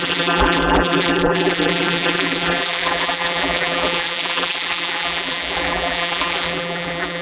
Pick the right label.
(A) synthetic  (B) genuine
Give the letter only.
A